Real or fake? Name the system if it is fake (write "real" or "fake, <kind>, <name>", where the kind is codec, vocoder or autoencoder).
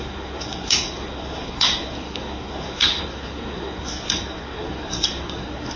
fake, codec, SNAC